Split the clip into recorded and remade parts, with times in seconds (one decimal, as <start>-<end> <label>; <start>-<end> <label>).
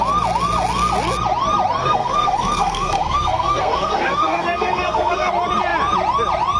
0.0-1.8 recorded; 1.8-5.3 remade; 5.3-6.6 recorded